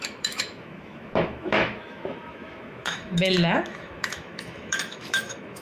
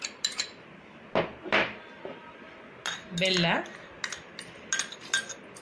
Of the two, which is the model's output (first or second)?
first